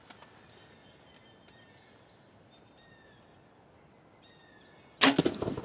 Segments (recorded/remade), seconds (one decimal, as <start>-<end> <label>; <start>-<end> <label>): 0.0-5.6 recorded